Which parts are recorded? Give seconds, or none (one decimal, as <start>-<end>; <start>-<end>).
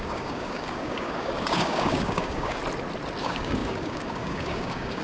2.6-3.2